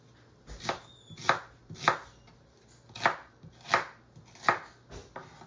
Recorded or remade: recorded